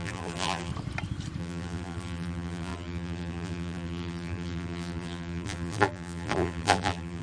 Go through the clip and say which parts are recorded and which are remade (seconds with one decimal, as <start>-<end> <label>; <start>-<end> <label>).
0.0-0.7 remade; 0.7-1.4 recorded; 1.4-7.2 remade